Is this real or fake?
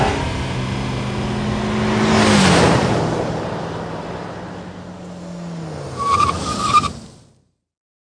real